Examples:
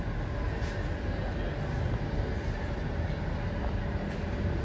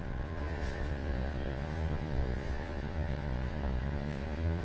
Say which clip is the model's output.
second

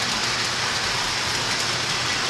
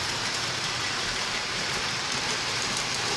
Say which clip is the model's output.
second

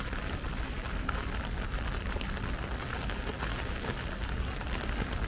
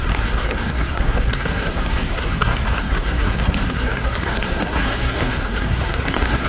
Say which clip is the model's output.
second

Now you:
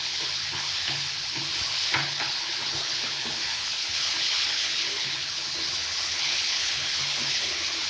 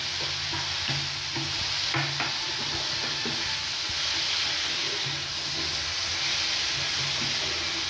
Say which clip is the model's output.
first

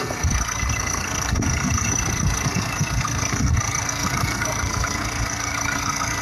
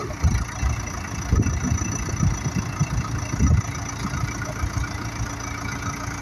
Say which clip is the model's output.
first